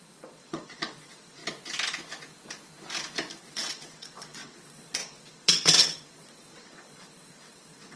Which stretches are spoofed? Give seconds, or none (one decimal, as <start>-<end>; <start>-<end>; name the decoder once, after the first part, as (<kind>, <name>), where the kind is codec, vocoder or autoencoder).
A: 0.0-1.4 (vocoder, WaveNeXt); 3.4-8.0